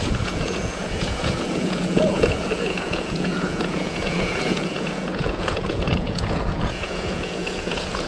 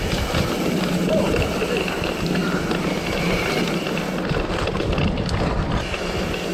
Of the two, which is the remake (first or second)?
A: first